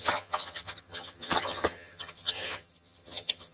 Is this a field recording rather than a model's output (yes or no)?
no